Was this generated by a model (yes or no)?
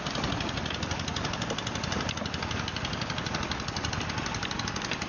no